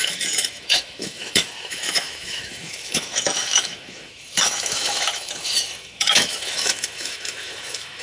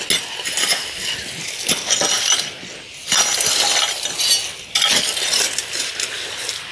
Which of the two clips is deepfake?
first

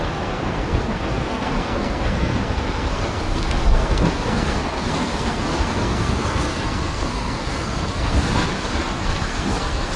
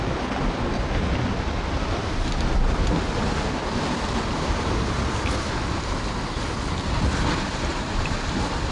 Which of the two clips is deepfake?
first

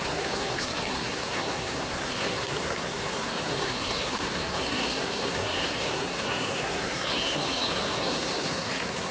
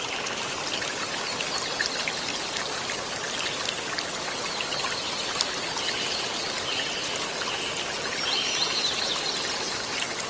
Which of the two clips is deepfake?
first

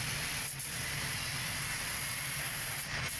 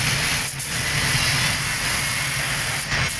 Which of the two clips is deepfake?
first